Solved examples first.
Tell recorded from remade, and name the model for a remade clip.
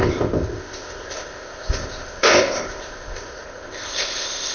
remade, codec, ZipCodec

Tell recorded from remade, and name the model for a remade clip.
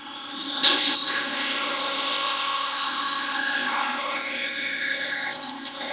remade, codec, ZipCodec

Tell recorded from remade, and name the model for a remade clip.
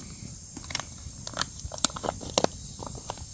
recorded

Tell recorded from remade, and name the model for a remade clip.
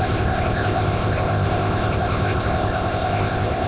remade, codec, ZipCodec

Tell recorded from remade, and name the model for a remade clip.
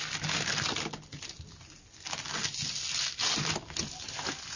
recorded